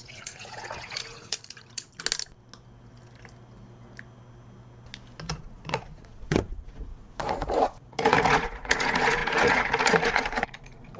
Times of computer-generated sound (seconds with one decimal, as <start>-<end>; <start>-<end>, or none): 0.0-1.9; 5.3-11.0